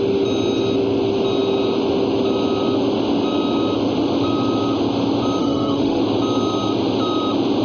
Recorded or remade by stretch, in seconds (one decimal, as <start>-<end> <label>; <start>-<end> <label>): 0.0-5.4 recorded; 5.4-6.0 remade; 6.0-7.6 recorded